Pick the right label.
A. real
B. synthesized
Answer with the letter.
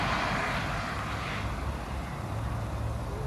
A